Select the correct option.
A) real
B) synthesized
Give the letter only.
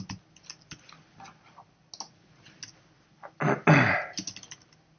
A